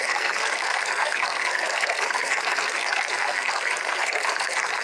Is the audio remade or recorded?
remade